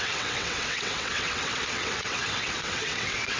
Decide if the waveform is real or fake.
fake